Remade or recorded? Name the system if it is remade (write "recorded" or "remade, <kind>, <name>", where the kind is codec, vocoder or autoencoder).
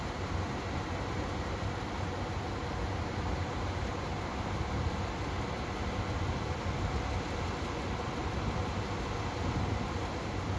recorded